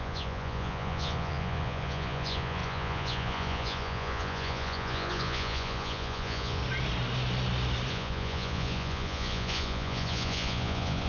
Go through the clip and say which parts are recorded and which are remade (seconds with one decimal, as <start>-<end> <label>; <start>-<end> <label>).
0.0-6.6 remade; 6.6-7.9 recorded; 7.9-11.1 remade